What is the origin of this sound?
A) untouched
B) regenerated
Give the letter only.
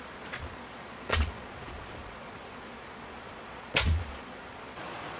B